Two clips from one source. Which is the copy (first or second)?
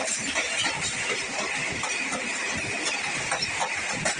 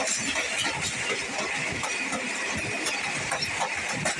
first